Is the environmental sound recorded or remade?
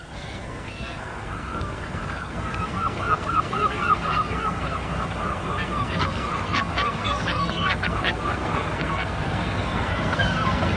remade